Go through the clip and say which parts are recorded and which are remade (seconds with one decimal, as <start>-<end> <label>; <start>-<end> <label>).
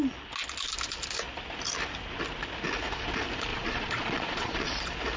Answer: 0.0-3.5 recorded; 3.5-4.7 remade; 4.7-5.2 recorded